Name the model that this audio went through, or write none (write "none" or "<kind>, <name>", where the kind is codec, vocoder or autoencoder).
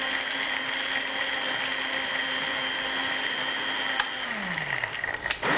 none